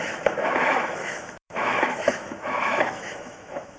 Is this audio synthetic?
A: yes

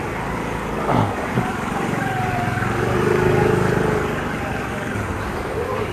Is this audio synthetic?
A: yes